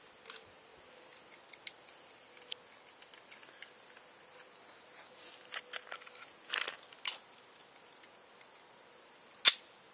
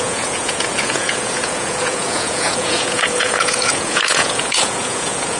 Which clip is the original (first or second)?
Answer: first